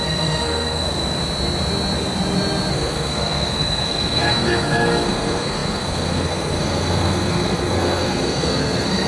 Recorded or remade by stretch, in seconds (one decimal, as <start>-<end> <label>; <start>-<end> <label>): 0.0-1.0 remade; 1.0-2.7 recorded; 2.7-9.1 remade